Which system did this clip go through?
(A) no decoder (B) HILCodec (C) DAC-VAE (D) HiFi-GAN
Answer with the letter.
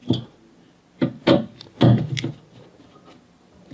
A